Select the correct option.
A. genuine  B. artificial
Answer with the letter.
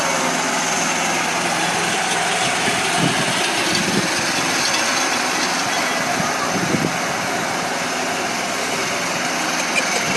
A